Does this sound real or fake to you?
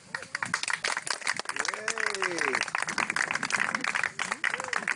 real